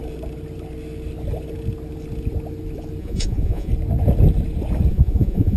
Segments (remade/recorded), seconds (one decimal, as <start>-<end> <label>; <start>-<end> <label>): 0.0-3.0 recorded; 3.0-3.7 remade; 3.7-4.9 recorded; 4.9-5.6 remade